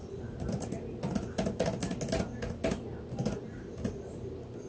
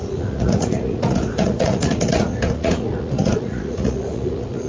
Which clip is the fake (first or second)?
second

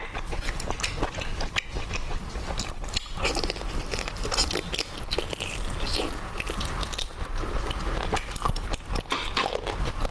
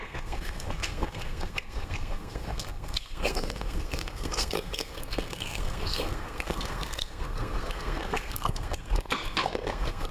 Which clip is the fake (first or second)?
second